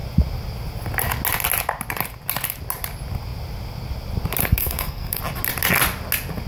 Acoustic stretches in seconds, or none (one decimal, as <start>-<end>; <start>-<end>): 0.0-4.4; 5.2-6.5